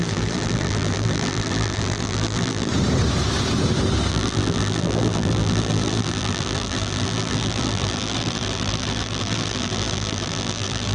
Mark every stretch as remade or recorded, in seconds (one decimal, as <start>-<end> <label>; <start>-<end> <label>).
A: 0.0-2.7 remade; 2.7-4.1 recorded; 4.1-10.9 remade